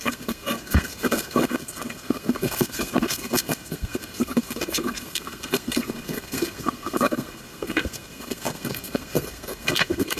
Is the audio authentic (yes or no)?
no